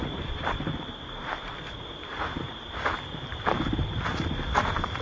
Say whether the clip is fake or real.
fake